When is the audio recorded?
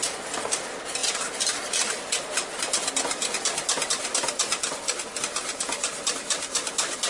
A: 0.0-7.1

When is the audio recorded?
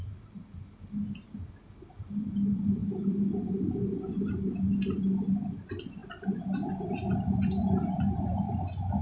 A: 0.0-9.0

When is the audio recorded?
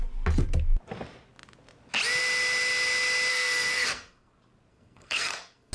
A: 0.0-3.3; 4.3-4.7